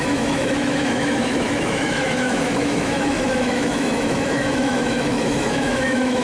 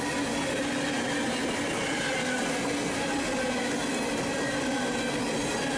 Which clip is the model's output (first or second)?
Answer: first